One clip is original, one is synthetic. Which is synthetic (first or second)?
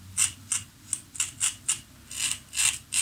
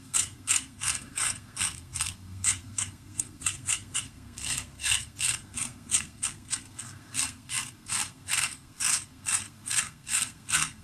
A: second